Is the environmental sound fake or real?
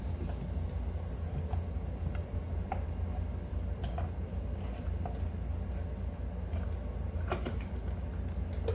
real